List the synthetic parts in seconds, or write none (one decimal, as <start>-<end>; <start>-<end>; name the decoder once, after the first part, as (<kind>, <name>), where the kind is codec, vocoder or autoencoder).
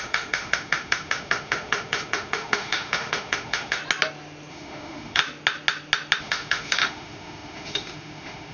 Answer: 0.0-3.8 (autoencoder, DAC-VAE); 4.5-5.2; 6.2-8.5